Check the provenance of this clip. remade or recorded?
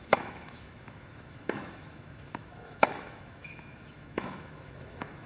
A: remade